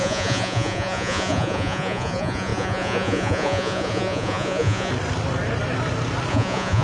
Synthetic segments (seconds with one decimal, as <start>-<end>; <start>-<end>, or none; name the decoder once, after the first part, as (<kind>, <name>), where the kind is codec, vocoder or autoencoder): 0.0-4.9 (vocoder, Vocos); 6.3-6.8